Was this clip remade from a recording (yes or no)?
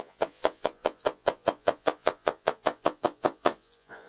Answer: yes